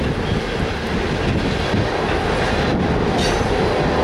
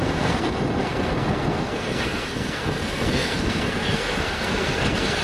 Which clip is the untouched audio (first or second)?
first